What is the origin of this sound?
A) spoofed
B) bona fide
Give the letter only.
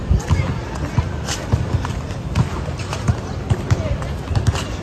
A